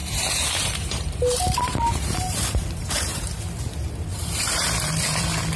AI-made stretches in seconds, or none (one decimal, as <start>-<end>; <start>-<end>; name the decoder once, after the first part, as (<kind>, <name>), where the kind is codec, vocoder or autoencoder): 0.0-3.4 (vocoder, BigVGAN v2); 4.1-4.7